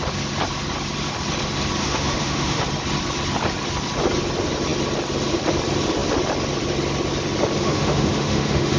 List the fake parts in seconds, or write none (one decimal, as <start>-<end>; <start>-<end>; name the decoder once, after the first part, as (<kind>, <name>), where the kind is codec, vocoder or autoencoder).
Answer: 1.8-2.6 (autoencoder, DAC-VAE); 7.6-8.8